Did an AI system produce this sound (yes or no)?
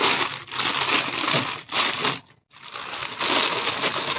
no